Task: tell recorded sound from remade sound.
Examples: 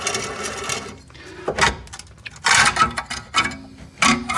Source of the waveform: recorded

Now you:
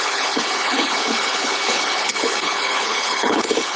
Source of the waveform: remade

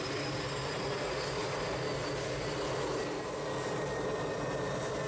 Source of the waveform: recorded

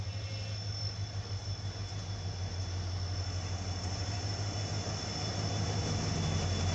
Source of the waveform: recorded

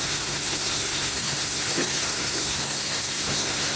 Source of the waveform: remade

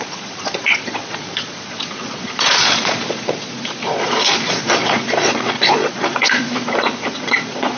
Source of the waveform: remade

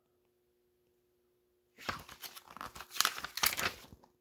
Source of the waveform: recorded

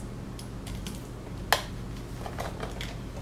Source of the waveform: recorded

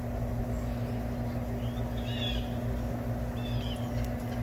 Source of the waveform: recorded